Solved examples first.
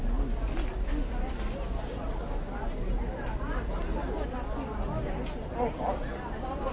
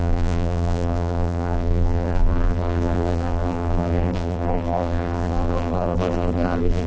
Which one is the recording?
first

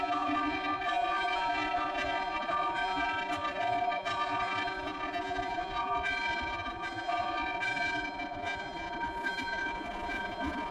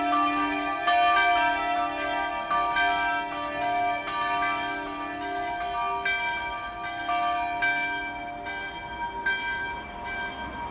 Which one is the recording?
second